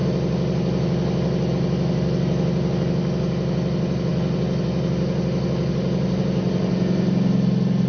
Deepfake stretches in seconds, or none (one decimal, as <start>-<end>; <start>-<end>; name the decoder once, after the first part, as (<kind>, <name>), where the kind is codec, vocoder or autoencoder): none